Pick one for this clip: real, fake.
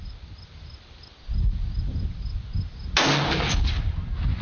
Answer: real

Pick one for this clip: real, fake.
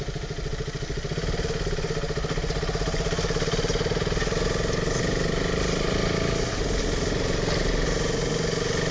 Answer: real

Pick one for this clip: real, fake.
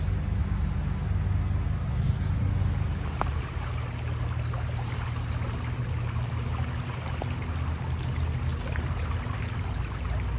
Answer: real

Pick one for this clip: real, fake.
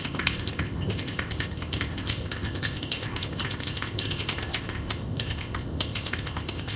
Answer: fake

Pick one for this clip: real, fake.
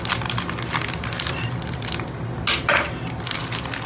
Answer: real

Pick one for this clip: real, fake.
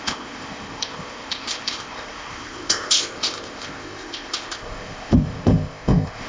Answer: fake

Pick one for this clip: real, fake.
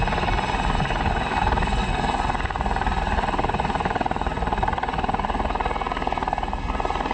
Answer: real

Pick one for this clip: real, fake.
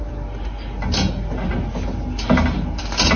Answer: real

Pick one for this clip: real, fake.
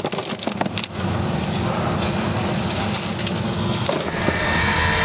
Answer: real